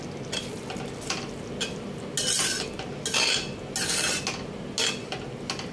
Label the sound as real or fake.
real